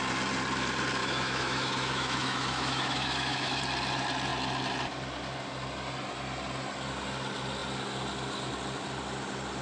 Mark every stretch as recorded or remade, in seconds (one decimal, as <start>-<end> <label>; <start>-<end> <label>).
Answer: 0.0-1.0 recorded; 1.0-3.6 remade; 3.6-9.6 recorded